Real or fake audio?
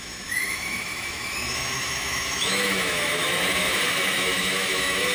fake